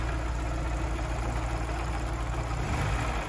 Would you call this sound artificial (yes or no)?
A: no